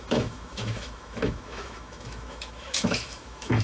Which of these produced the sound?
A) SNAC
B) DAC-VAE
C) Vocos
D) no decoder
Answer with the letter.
B